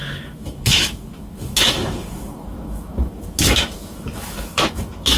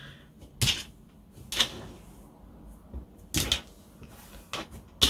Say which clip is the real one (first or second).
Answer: second